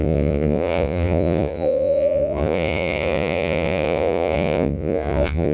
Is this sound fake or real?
fake